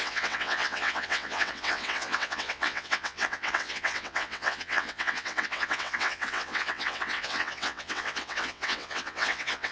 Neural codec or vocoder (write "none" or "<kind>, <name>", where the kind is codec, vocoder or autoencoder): vocoder, WaveNeXt